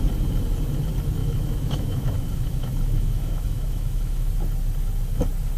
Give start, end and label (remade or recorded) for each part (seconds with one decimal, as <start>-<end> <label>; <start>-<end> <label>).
0.0-1.2 recorded; 1.2-4.3 remade; 4.3-5.6 recorded